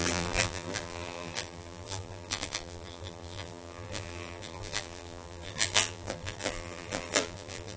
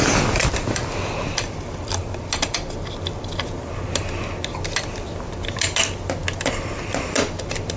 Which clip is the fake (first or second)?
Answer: first